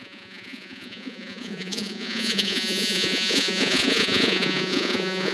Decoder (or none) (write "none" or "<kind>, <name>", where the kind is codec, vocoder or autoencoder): vocoder, Vocos